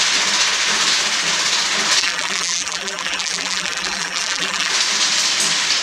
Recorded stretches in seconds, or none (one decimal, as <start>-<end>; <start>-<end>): 0.0-2.0; 4.7-5.8

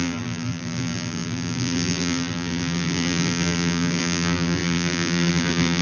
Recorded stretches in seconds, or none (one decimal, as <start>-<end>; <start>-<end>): none

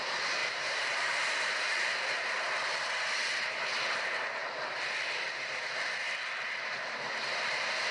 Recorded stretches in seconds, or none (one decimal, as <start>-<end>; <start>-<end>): 0.0-0.4; 1.9-7.9

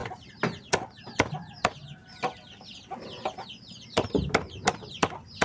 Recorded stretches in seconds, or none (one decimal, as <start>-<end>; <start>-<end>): 0.0-5.4

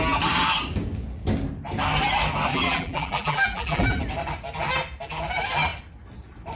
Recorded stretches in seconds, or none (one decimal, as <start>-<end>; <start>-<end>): 0.0-2.5; 4.0-6.6

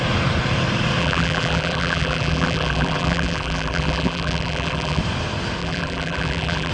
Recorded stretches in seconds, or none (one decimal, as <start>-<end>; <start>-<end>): 0.0-1.0; 5.0-5.6

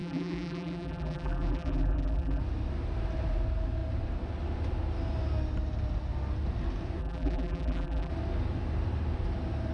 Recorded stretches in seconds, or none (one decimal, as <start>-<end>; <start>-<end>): 2.4-7.0; 8.1-9.7